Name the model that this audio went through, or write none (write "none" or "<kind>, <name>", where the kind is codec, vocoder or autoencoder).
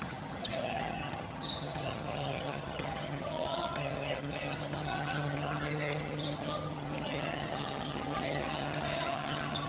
vocoder, HiFi-GAN